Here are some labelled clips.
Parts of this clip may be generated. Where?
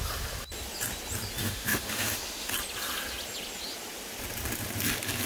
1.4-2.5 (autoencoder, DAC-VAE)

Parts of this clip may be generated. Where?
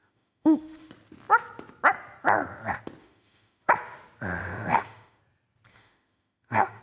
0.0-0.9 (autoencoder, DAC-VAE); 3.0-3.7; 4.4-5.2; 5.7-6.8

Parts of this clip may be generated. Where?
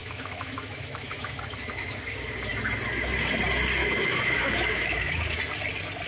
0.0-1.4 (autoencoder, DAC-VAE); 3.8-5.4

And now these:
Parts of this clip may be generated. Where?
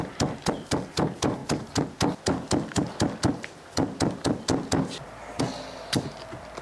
none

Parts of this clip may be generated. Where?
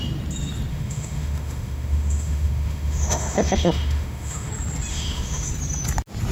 0.7-4.5 (autoencoder, DAC-VAE); 4.9-5.5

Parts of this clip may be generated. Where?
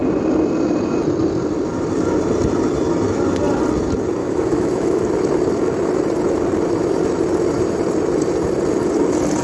4.2-5.0 (autoencoder, DAC-VAE)